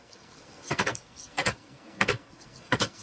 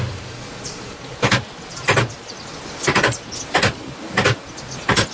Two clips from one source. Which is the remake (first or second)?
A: first